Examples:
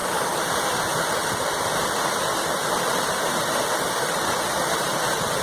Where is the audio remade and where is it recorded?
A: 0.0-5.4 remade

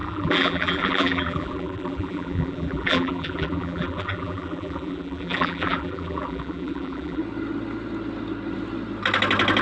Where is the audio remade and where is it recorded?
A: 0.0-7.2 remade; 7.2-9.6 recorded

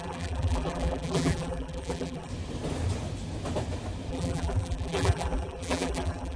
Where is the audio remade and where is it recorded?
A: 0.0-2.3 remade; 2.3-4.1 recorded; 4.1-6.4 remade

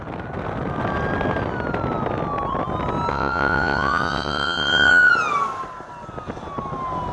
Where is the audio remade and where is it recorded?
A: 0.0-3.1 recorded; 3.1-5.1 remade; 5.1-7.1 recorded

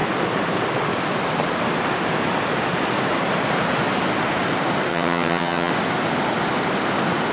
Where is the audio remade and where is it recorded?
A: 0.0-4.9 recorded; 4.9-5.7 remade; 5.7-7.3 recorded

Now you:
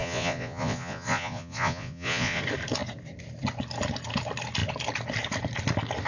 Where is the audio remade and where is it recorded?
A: 0.0-2.4 remade; 2.4-6.1 recorded

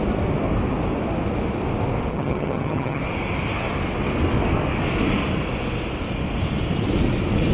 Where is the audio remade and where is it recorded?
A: 0.0-2.1 recorded; 2.1-3.0 remade; 3.0-7.5 recorded

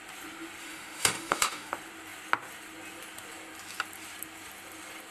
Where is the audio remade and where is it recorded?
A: 0.0-0.6 recorded; 0.6-1.7 remade; 1.7-5.1 recorded